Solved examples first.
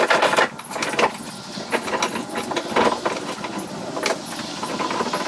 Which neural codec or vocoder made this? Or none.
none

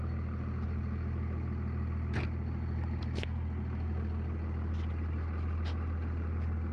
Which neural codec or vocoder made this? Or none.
none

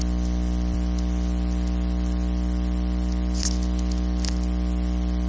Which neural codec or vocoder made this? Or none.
none